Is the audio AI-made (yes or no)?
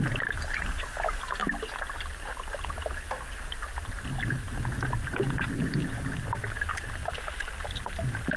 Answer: no